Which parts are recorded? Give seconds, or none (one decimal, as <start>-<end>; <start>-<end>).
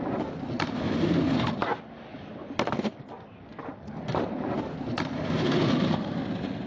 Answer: 1.6-3.6